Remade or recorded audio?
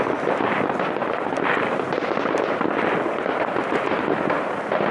recorded